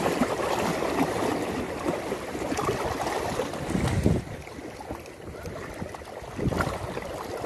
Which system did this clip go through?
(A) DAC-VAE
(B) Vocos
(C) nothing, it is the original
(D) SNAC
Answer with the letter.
C